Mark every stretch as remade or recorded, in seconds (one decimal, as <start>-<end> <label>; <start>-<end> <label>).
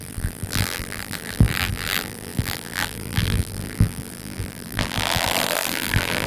0.0-6.3 remade